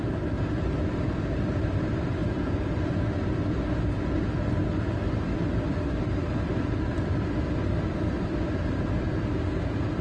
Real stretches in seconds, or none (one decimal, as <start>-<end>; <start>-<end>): 0.0-10.0